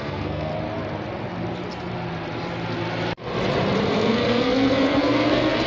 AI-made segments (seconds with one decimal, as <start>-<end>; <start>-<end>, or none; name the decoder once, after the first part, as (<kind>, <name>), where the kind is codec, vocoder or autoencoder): 0.0-0.5 (codec, SNAC); 3.9-5.7